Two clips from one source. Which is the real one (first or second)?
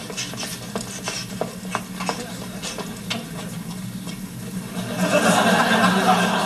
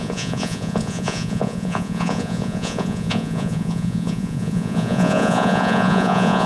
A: first